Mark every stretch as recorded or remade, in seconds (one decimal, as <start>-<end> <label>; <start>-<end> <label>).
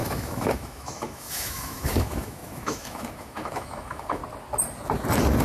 0.0-4.2 remade; 4.2-5.4 recorded